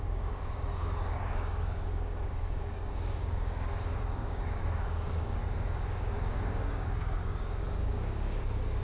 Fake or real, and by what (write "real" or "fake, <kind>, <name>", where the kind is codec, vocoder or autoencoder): fake, codec, DAC